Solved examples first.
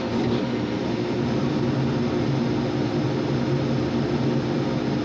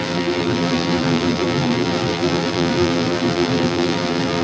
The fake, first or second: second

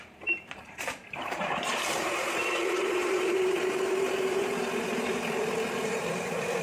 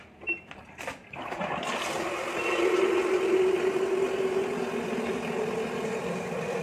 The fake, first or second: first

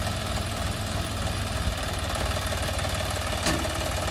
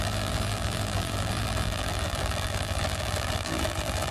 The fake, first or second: second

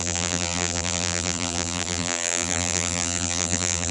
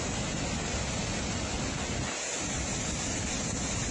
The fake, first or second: first